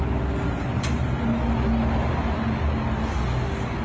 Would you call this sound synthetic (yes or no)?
no